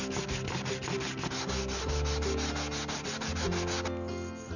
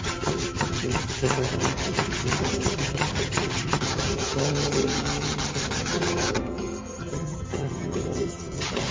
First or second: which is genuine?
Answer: first